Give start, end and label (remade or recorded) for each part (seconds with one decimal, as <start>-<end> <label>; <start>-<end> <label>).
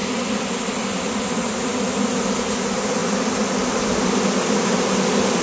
0.0-5.4 recorded